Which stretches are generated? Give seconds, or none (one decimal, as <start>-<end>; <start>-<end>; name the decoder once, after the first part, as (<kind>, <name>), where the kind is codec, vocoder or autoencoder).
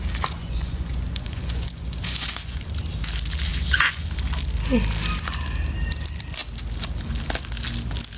0.4-2.6 (vocoder, Vocos); 3.5-4.1